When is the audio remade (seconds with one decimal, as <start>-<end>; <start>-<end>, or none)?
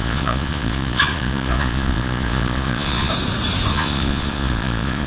0.0-3.1; 3.7-5.1